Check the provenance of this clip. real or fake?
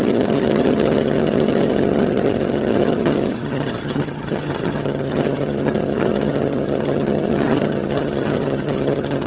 fake